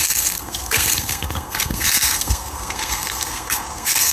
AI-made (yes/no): yes